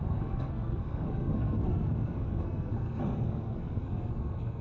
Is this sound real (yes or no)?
no